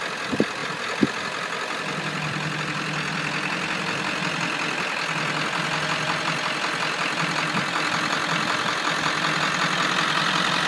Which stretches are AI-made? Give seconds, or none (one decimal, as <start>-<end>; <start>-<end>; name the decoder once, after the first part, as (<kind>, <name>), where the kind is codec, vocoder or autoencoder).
none